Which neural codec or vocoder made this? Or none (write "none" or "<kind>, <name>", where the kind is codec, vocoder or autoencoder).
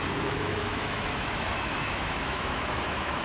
autoencoder, DAC-VAE